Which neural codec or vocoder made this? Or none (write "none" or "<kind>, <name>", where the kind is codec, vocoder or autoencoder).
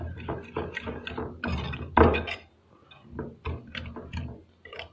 none